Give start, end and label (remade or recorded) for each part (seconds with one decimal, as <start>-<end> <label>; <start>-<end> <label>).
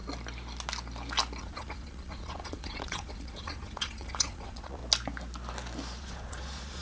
0.0-1.4 recorded; 1.4-4.8 remade; 4.8-6.0 recorded; 6.0-6.8 remade